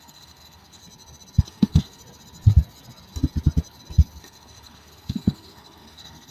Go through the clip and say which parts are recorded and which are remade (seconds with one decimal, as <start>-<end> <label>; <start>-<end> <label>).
0.0-0.8 remade; 0.8-1.4 recorded; 1.4-2.0 remade; 2.0-4.2 recorded; 4.2-6.3 remade